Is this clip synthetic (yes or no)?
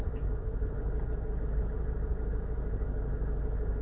no